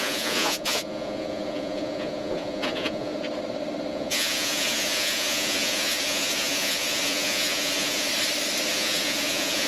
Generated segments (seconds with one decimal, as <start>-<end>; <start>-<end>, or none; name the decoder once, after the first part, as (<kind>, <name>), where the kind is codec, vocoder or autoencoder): 0.0-3.1 (vocoder, Vocos); 3.9-8.1; 8.7-9.7

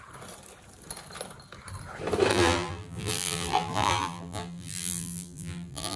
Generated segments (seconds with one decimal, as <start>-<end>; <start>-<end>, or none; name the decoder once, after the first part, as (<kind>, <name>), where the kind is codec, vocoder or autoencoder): 2.3-6.0 (vocoder, BigVGAN v2)

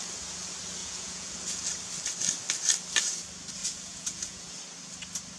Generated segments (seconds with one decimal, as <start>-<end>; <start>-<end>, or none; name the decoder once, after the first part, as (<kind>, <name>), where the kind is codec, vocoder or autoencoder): 0.8-1.7 (vocoder, Vocos); 3.6-4.5

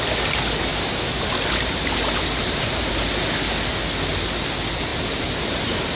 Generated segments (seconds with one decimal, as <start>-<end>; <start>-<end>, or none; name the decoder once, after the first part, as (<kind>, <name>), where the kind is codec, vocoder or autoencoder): 0.7-2.0 (vocoder, BigVGAN v2); 2.4-2.9; 4.9-6.0

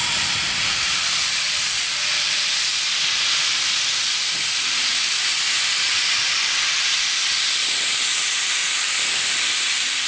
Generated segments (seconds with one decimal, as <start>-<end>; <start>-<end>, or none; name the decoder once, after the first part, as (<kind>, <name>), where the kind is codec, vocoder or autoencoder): 0.0-2.7 (vocoder, BigVGAN v2); 3.8-4.9; 6.1-8.6; 9.1-10.1